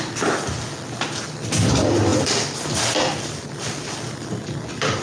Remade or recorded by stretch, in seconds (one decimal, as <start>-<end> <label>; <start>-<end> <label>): 0.0-5.0 recorded